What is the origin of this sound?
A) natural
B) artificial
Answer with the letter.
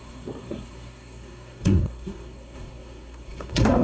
B